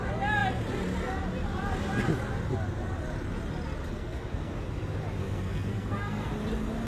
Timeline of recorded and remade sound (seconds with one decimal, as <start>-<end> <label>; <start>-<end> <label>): 0.0-3.9 recorded; 3.9-4.5 remade; 4.5-5.2 recorded; 5.2-6.3 remade; 6.3-6.9 recorded